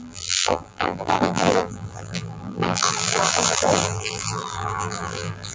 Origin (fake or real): fake